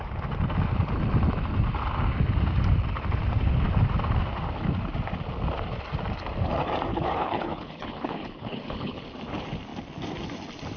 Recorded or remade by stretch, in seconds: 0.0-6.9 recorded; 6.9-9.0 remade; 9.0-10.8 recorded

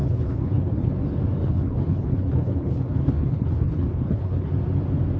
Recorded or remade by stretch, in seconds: 0.0-0.9 remade; 0.9-1.4 recorded; 1.4-4.5 remade; 4.5-5.2 recorded

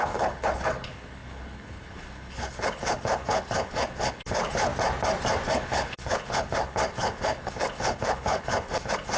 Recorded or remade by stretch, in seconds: 0.0-4.7 remade; 4.7-5.5 recorded; 5.5-9.2 remade

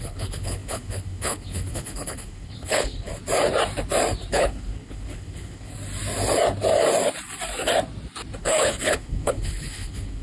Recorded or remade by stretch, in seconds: 0.0-3.1 remade; 3.1-4.3 recorded; 4.3-5.7 remade; 5.7-8.4 recorded; 8.4-10.2 remade